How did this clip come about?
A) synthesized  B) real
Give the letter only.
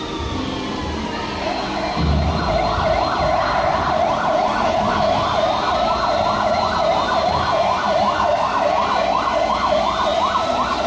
B